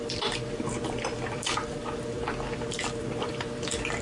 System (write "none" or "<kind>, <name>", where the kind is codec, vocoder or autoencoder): vocoder, BigVGAN v2